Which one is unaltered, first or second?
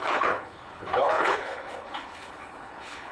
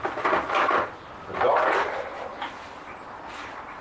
second